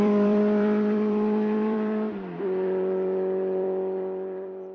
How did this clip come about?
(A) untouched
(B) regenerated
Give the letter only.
B